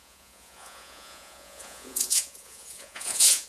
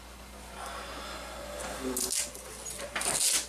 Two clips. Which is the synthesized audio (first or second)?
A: first